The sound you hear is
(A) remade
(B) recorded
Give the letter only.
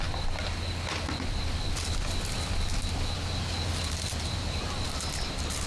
B